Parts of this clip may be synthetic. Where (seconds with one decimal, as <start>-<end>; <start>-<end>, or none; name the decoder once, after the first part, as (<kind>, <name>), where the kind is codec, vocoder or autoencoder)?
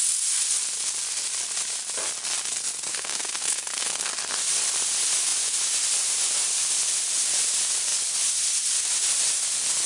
2.9-4.1 (codec, SNAC)